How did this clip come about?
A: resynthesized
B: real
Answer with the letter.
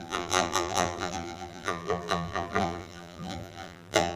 A